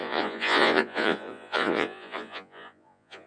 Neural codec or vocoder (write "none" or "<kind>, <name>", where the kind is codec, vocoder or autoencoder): vocoder, Vocos